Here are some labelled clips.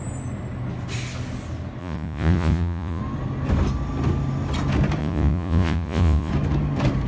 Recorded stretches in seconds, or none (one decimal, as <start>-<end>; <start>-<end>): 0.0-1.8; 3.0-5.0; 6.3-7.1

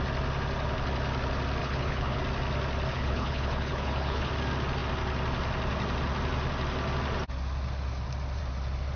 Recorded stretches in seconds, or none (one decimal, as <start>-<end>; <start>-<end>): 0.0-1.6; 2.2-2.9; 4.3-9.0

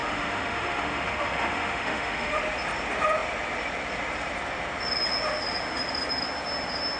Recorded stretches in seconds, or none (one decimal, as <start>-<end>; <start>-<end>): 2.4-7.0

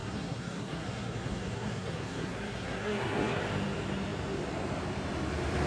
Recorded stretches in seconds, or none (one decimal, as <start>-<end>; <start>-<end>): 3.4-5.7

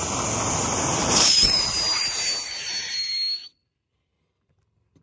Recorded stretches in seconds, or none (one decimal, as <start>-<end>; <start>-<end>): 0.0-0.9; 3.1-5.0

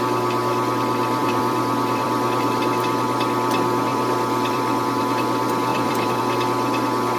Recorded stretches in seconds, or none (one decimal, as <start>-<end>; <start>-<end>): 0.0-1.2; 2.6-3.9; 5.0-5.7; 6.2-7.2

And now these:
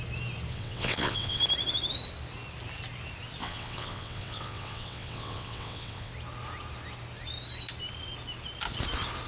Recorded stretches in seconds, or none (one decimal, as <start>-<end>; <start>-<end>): 0.0-0.5; 1.4-3.4; 6.1-9.3